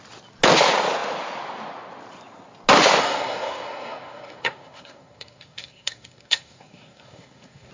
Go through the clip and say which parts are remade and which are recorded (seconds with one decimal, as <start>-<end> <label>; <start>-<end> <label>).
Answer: 0.0-3.0 recorded; 3.0-7.7 remade